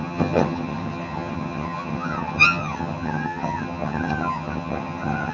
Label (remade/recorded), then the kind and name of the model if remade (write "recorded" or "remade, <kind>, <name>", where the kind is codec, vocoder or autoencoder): remade, vocoder, HiFi-GAN